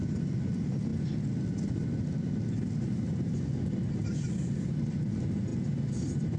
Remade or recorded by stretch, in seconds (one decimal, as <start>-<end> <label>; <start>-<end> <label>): 0.0-6.4 remade